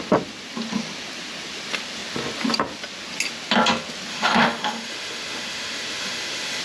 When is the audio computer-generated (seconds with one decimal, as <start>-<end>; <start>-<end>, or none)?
4.1-6.6